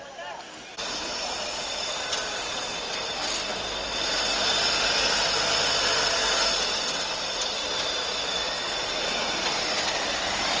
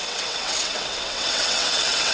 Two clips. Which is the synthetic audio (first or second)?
second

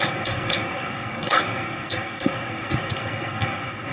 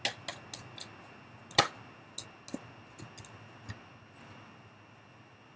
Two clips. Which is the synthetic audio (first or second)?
first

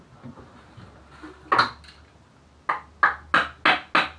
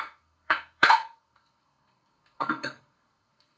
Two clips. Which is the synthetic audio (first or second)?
second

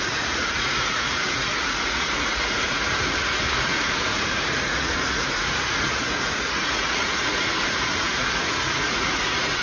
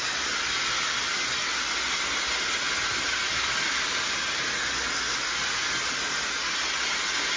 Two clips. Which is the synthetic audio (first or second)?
first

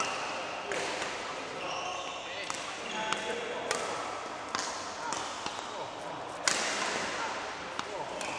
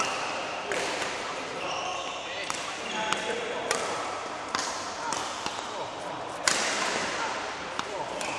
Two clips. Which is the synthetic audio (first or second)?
second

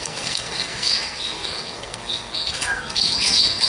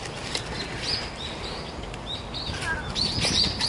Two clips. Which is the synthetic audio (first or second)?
first